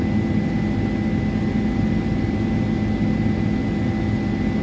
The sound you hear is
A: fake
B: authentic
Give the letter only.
B